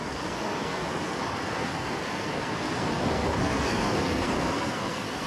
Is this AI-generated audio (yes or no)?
yes